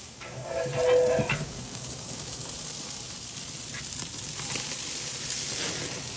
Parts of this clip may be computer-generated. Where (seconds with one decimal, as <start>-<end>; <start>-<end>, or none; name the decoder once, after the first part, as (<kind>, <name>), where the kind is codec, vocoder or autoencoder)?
0.0-0.7 (codec, DAC); 1.3-2.4